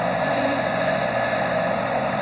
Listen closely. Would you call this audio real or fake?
fake